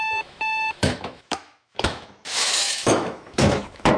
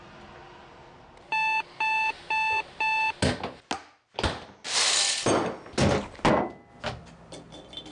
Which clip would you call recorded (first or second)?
second